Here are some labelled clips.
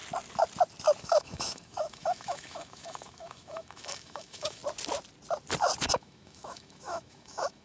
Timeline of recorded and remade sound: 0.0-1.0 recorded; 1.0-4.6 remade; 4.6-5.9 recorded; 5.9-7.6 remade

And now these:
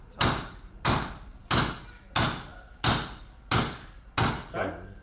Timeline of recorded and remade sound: 0.0-5.0 recorded

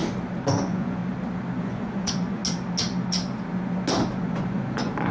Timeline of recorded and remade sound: 0.0-0.6 recorded; 0.6-1.0 remade; 1.0-1.6 recorded; 1.6-2.4 remade; 2.4-4.2 recorded; 4.2-5.1 remade

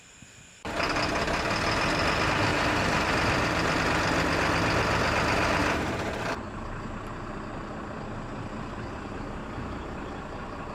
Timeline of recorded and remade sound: 0.0-2.5 recorded; 2.5-3.8 remade; 3.8-5.6 recorded; 5.6-7.1 remade; 7.1-9.4 recorded; 9.4-10.7 remade

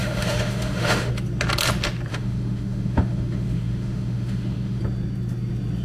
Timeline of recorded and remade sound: 0.0-1.1 remade; 1.1-2.1 recorded; 2.1-4.8 remade; 4.8-5.8 recorded